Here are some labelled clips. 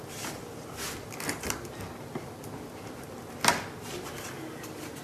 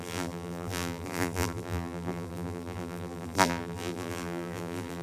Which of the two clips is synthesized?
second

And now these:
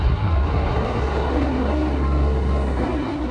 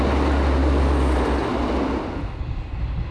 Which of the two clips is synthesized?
first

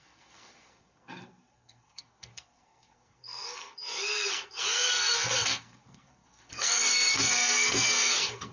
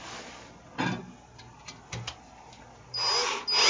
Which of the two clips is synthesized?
first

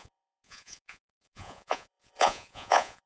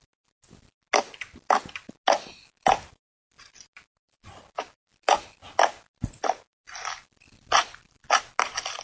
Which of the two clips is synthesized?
first